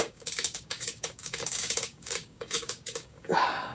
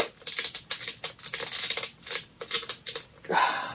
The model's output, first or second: first